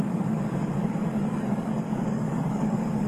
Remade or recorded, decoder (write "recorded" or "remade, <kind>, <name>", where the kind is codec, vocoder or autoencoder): remade, codec, DAC